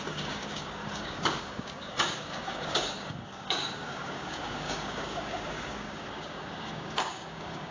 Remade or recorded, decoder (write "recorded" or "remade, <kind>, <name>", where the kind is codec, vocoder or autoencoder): remade, codec, DAC